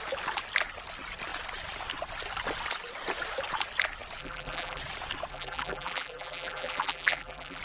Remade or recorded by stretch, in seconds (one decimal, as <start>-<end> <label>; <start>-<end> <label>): 0.0-4.2 recorded; 4.2-4.8 remade; 4.8-5.3 recorded; 5.3-7.6 remade